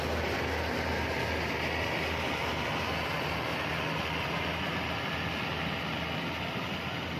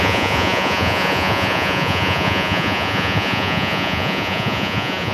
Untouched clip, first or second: first